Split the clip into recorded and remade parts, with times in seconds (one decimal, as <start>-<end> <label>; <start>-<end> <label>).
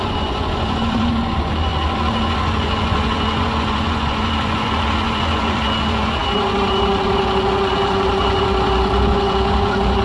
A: 0.0-10.0 remade